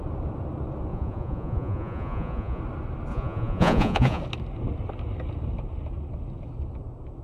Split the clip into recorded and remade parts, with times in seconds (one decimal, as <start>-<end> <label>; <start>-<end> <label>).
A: 0.0-0.9 recorded; 0.9-2.6 remade; 2.6-3.1 recorded; 3.1-4.2 remade; 4.2-7.2 recorded